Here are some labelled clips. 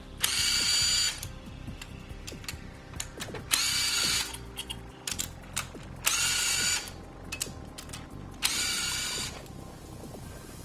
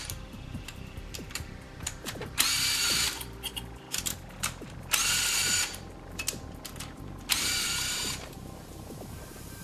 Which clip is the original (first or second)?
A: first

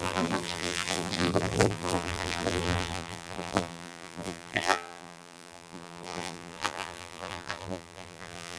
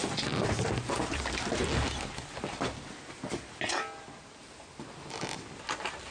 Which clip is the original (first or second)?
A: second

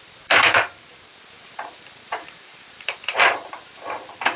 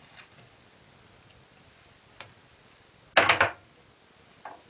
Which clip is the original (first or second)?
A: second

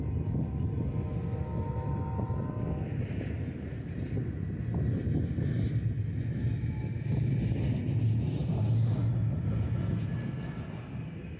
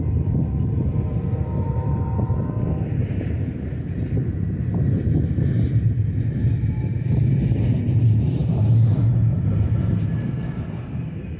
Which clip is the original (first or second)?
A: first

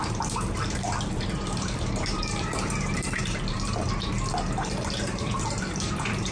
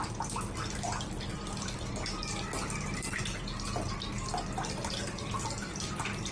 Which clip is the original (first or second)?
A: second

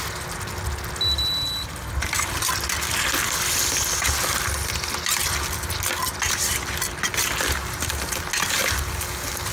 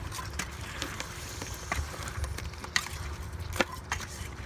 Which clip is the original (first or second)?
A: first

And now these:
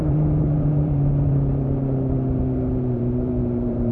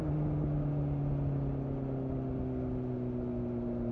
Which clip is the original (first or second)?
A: second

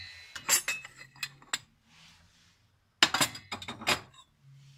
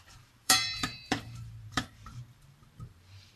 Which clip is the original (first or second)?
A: first